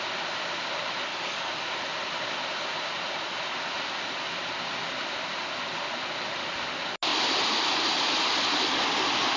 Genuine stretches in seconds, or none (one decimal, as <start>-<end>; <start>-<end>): 0.0-1.1; 1.7-9.4